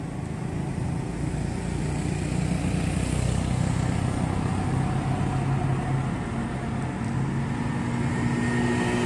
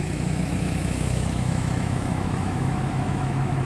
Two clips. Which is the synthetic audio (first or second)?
second